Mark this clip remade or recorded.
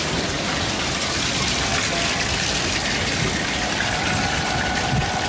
recorded